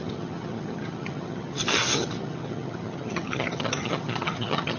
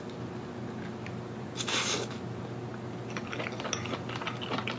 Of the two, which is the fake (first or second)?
first